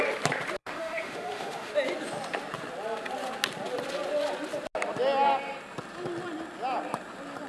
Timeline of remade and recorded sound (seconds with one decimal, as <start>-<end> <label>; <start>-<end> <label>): 0.0-0.6 recorded; 0.6-1.7 remade; 1.7-7.5 recorded

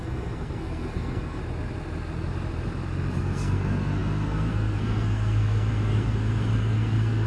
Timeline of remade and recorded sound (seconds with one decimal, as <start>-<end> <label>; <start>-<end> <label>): 0.0-1.4 remade; 1.4-3.2 recorded; 3.2-7.3 remade

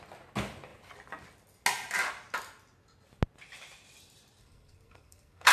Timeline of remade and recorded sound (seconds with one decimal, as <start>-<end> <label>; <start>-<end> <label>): 0.0-4.4 recorded; 4.4-5.5 remade

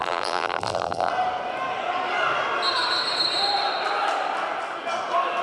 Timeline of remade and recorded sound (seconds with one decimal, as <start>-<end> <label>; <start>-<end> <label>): 0.0-1.1 remade; 1.1-5.4 recorded

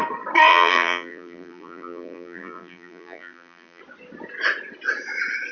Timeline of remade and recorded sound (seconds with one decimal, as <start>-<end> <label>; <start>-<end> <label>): 0.0-0.5 recorded; 0.5-3.8 remade; 3.8-5.5 recorded

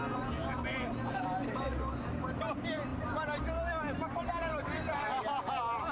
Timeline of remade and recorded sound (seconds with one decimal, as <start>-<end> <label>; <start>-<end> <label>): 0.0-5.9 recorded

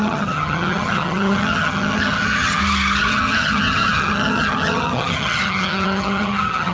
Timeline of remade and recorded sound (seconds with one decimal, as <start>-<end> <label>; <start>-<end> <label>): 0.0-2.6 remade; 2.6-3.1 recorded; 3.1-6.7 remade

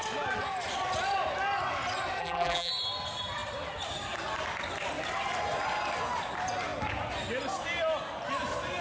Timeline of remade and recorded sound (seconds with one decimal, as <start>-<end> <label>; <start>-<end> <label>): 0.0-2.2 recorded; 2.2-2.7 remade; 2.7-8.8 recorded